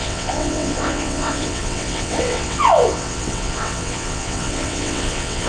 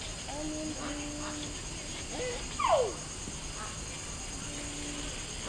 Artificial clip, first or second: first